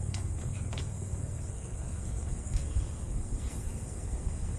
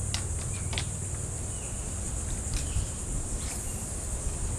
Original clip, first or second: second